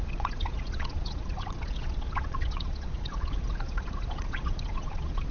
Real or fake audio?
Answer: fake